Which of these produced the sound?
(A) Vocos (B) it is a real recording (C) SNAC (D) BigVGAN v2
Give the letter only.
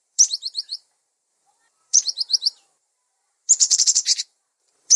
D